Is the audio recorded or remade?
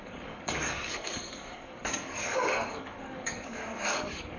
remade